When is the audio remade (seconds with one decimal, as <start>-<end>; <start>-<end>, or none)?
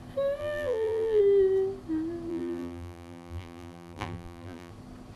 0.4-1.2; 2.3-4.7